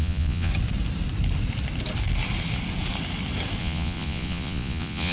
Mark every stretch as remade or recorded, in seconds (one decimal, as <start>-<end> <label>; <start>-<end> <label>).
0.0-0.5 remade; 0.5-3.6 recorded; 3.6-5.1 remade